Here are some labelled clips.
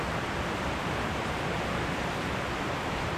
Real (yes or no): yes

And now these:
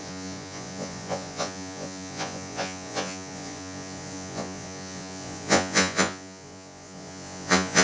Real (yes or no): no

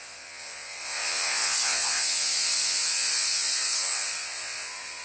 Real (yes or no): no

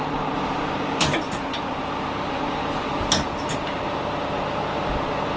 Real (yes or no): yes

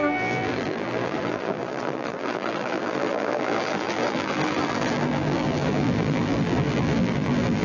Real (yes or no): no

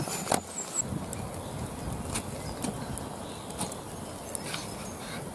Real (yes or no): yes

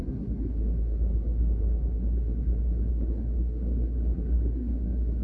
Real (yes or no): no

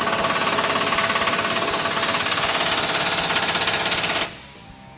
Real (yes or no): yes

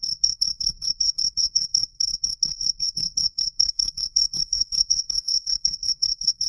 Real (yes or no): no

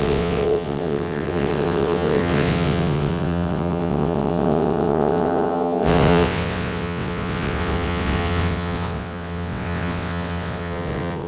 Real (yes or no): no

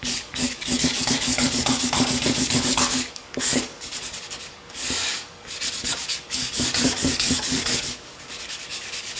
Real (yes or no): no